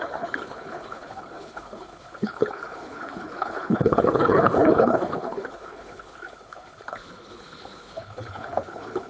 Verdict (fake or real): fake